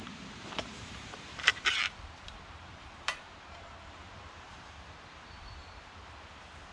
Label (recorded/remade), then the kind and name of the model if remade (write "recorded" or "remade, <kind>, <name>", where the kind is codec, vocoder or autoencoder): remade, vocoder, BigVGAN v2